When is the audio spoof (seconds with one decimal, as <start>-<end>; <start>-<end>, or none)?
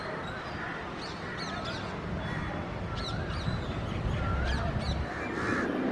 none